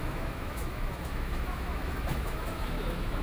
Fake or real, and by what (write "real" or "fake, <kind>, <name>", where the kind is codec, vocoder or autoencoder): fake, autoencoder, DAC-VAE